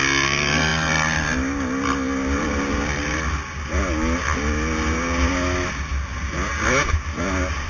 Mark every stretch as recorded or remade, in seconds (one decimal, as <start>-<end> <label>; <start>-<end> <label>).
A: 0.0-7.7 recorded